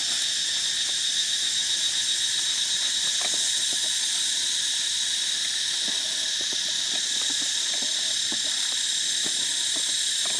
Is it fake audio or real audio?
real